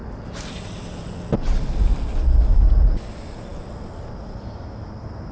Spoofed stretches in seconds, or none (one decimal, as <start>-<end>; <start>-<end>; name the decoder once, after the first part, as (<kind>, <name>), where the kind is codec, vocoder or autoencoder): none